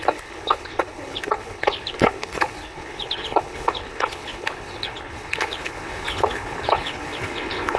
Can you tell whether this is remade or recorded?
remade